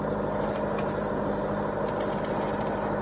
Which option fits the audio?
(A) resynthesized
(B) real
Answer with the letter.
B